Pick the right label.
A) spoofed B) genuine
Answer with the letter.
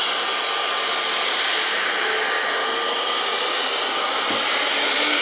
B